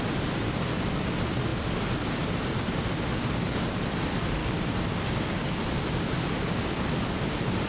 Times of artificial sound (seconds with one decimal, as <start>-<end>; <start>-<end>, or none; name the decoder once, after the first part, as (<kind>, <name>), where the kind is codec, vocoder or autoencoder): 4.4-5.5 (codec, DAC)